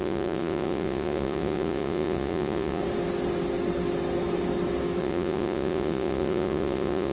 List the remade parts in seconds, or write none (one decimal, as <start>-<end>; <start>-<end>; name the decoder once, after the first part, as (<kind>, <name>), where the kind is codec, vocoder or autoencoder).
0.0-2.8 (vocoder, Vocos); 5.0-7.1